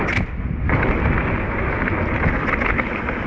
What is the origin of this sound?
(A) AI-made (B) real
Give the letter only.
B